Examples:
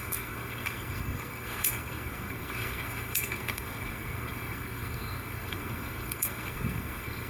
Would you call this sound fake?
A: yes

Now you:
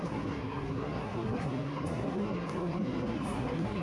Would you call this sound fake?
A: yes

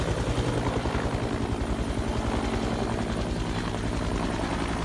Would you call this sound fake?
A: no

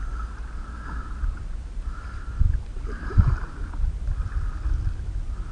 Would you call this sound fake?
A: no